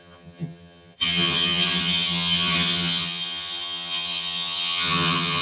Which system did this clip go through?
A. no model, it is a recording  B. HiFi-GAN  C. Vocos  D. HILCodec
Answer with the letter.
B